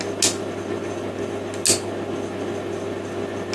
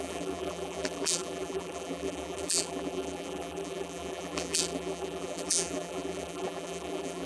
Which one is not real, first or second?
second